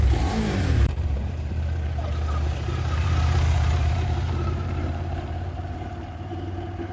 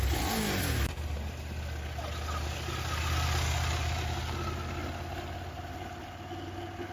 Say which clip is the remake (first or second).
first